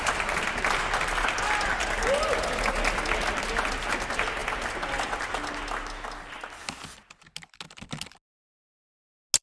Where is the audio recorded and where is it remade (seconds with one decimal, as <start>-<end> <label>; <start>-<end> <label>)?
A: 0.0-9.4 recorded